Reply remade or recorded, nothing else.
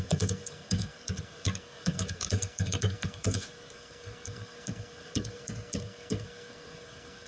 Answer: remade